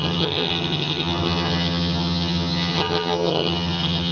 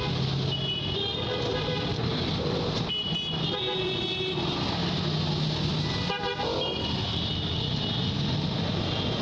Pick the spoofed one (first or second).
first